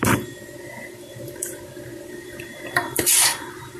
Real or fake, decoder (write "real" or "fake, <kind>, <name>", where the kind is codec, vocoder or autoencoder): fake, vocoder, BigVGAN v2